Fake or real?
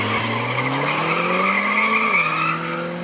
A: real